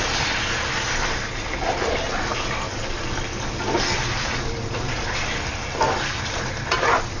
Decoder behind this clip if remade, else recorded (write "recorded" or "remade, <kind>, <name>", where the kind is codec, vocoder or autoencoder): recorded